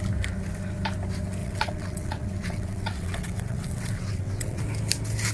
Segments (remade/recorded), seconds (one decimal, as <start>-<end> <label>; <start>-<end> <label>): 0.0-1.4 recorded; 1.4-4.6 remade; 4.6-5.3 recorded